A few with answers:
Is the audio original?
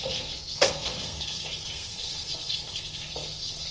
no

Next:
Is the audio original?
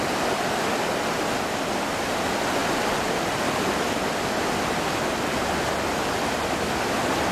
yes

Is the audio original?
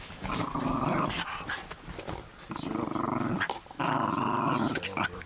yes